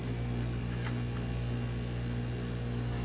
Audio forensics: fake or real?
real